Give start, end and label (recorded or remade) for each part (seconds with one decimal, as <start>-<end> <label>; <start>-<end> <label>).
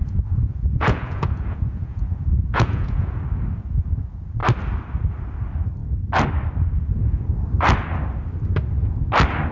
0.0-3.2 remade; 3.2-9.5 recorded